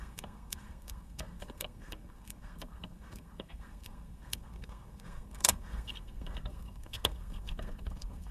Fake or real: fake